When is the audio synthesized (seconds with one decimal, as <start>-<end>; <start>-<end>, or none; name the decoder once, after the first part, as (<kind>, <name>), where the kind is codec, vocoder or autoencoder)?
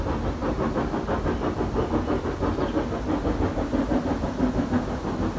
none